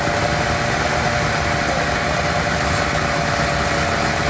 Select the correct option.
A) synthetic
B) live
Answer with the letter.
B